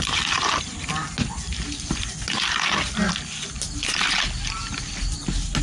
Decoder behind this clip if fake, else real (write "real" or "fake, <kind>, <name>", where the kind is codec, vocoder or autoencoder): real